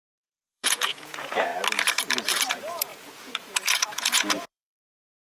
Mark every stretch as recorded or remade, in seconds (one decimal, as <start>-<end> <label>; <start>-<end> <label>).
0.0-1.5 remade; 1.5-2.5 recorded; 2.5-5.3 remade